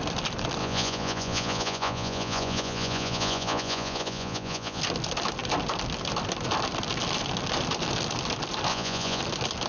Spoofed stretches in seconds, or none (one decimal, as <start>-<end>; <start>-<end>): 0.6-4.8; 8.7-9.2